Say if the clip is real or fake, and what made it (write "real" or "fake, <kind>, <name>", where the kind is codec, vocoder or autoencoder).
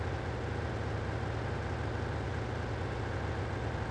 real